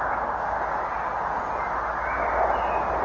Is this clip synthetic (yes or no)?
no